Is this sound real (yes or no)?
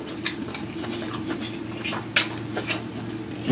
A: yes